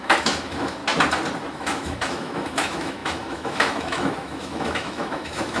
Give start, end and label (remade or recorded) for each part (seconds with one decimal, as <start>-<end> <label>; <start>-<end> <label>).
0.0-0.8 remade; 0.8-1.5 recorded; 1.5-5.6 remade